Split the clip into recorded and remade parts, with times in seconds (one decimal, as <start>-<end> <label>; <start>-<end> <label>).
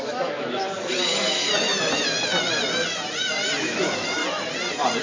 0.0-0.6 remade; 0.6-3.6 recorded; 3.6-4.2 remade; 4.2-5.0 recorded